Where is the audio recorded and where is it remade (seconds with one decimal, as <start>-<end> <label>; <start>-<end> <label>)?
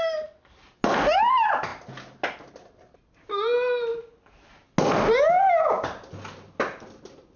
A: 0.0-7.4 recorded